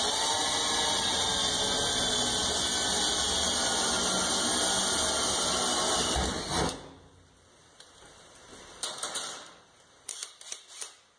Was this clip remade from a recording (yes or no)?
no